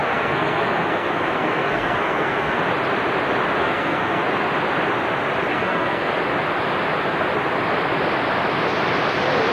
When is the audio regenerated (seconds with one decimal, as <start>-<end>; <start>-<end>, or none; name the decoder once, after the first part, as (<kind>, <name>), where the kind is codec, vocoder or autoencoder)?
0.0-2.6 (codec, SNAC); 3.6-4.2; 5.5-6.1